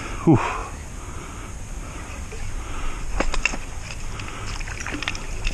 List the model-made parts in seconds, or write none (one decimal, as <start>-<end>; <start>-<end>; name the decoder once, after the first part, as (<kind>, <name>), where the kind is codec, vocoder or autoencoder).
none

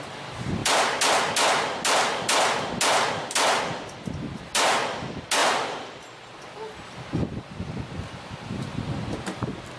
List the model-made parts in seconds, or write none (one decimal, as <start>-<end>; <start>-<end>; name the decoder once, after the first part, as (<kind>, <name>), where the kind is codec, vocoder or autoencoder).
none

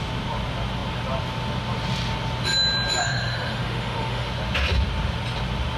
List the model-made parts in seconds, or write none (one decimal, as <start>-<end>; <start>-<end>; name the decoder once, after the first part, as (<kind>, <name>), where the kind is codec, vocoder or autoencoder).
3.0-4.3 (autoencoder, DAC-VAE)

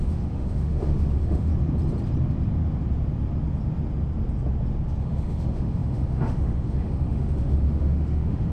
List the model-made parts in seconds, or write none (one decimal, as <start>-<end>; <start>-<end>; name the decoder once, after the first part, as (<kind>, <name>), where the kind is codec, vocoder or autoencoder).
0.0-1.5 (autoencoder, DAC-VAE); 5.0-8.5

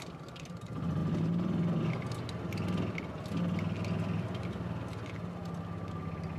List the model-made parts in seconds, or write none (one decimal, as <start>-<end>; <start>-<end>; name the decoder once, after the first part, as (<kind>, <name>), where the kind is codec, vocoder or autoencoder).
none

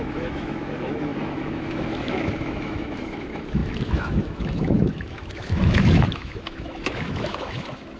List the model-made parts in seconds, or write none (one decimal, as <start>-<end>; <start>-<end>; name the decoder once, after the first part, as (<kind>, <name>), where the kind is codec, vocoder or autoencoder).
0.0-8.0 (autoencoder, DAC-VAE)

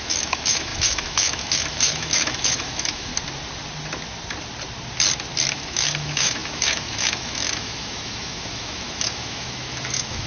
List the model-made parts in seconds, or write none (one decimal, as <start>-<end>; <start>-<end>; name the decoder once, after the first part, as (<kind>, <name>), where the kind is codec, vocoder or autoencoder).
0.0-3.1 (autoencoder, DAC-VAE); 5.5-10.3

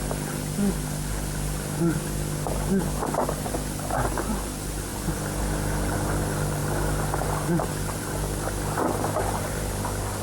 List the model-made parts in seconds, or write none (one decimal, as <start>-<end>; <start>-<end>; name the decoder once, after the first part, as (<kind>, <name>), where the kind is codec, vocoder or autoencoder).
none